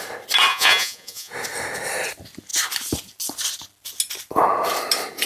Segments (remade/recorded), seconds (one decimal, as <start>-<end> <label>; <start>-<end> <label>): 0.0-0.5 recorded; 0.5-1.3 remade; 1.3-5.3 recorded